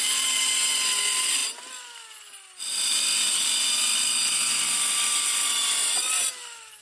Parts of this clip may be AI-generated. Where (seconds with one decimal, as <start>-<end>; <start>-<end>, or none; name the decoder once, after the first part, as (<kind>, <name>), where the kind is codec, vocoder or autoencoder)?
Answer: none